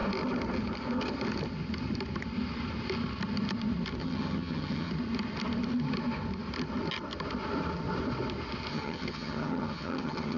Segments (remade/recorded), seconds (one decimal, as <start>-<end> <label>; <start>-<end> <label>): 0.0-4.0 recorded; 4.0-4.9 remade; 4.9-8.7 recorded; 8.7-10.4 remade